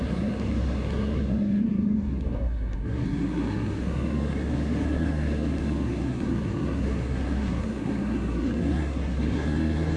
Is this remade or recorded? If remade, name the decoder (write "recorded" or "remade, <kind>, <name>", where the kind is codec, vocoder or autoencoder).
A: remade, codec, SNAC